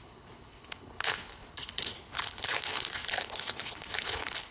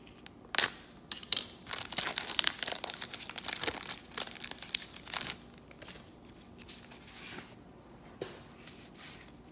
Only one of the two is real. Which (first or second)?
second